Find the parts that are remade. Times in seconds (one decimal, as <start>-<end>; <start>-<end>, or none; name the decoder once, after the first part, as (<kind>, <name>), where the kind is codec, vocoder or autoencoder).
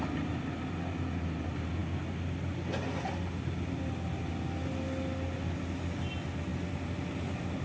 none